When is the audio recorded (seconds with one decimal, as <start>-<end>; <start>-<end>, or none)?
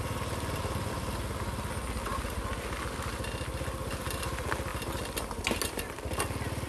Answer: 0.0-6.7